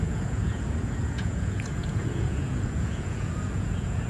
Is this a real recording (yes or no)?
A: no